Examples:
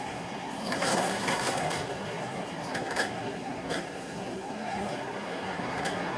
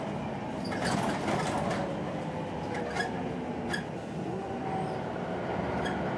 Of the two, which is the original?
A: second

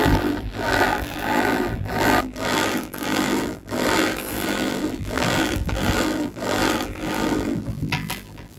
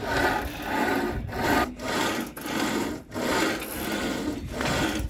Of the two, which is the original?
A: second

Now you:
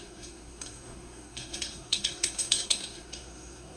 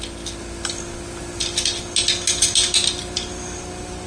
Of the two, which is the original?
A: second